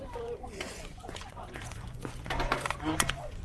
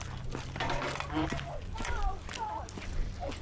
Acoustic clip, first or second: second